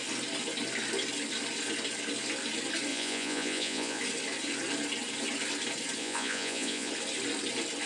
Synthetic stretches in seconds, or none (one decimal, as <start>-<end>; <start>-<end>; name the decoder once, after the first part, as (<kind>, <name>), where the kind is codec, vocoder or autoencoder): 2.9-4.0 (vocoder, Vocos); 6.0-6.9